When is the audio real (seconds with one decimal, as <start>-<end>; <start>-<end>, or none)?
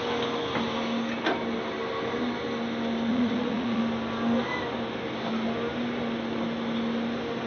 0.0-3.1; 3.8-7.5